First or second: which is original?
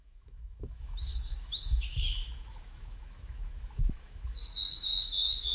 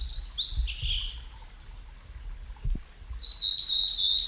second